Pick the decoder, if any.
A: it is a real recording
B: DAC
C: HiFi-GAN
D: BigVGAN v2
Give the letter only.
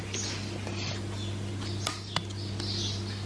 A